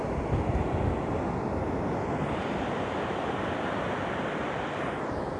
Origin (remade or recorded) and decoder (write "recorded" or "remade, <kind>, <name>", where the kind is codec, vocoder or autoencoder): recorded